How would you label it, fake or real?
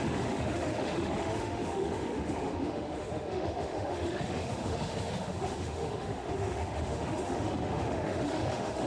fake